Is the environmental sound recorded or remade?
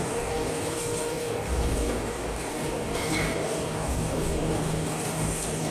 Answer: remade